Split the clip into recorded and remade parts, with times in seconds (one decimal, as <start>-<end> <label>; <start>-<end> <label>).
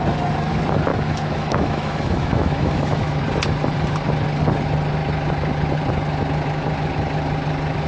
0.0-0.9 recorded; 0.9-3.2 remade; 3.2-7.9 recorded